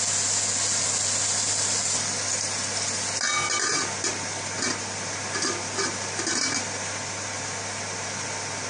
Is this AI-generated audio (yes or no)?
no